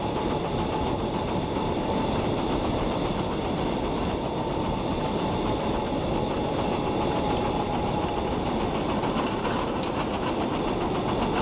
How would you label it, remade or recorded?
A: recorded